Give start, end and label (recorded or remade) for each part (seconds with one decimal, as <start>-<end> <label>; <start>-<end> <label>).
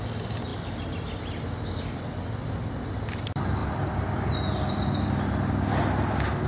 0.0-6.5 recorded